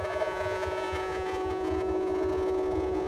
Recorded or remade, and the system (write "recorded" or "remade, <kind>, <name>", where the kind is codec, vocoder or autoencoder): remade, vocoder, Vocos